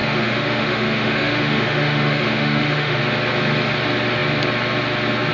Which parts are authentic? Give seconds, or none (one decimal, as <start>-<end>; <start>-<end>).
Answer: 3.0-5.3